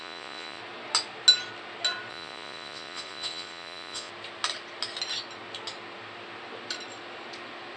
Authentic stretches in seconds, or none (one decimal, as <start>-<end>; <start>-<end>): 0.6-2.1; 4.1-7.8